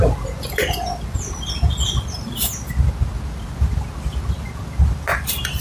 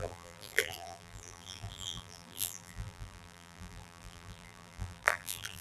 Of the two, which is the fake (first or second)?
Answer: second